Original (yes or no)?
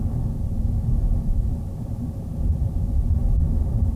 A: no